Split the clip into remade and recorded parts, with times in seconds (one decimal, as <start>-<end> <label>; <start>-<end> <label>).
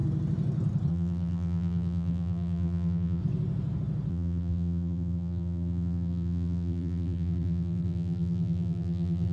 0.0-0.9 recorded; 0.9-3.2 remade; 3.2-4.1 recorded; 4.1-9.3 remade